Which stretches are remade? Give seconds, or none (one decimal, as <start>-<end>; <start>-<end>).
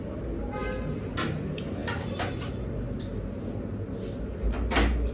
none